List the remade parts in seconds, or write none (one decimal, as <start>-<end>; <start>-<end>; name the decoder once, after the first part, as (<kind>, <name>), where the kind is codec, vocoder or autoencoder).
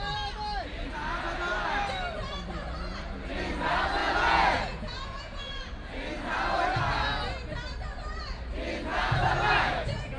4.0-5.7 (vocoder, Vocos); 8.9-10.2